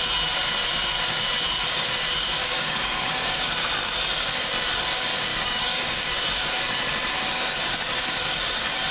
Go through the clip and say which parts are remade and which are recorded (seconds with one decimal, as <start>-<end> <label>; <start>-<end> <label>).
0.0-2.4 recorded; 2.4-3.5 remade; 3.5-5.3 recorded; 5.3-6.1 remade; 6.1-8.9 recorded